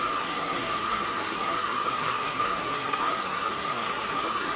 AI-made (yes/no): yes